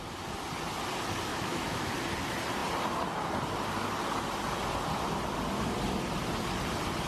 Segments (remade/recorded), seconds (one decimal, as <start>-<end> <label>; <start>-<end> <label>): 0.0-1.3 recorded; 1.3-1.9 remade; 1.9-7.1 recorded